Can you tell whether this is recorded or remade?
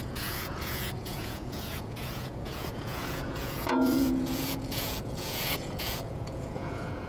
remade